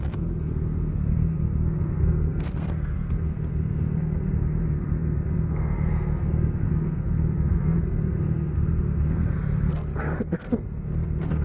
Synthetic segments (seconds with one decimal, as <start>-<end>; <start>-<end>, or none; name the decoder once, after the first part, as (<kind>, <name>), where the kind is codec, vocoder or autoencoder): 0.0-11.4 (codec, SNAC)